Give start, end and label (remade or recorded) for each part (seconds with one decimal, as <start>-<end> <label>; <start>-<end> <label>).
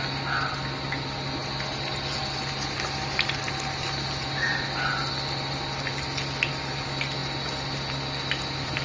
0.0-7.2 recorded; 7.2-8.2 remade; 8.2-8.8 recorded